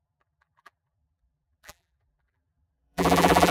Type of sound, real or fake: fake